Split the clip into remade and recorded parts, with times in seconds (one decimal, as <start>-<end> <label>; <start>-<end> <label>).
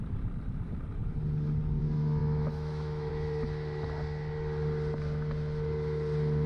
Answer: 0.0-2.2 recorded; 2.2-3.1 remade; 3.1-6.5 recorded